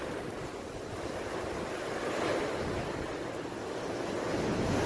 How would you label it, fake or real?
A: real